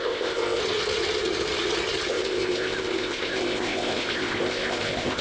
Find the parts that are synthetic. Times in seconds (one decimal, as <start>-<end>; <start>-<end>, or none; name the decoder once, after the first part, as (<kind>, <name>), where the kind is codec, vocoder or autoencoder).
0.0-0.6 (codec, ZipCodec); 2.1-5.2